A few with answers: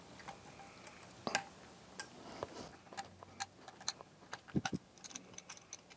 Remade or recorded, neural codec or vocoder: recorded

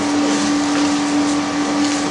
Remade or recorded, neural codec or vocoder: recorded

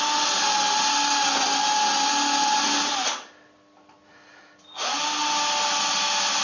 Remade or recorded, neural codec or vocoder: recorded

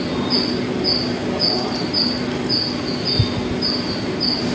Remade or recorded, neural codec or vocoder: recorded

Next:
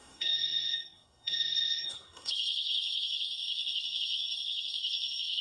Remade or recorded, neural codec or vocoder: remade, codec, SNAC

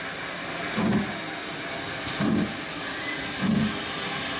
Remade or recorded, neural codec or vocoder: recorded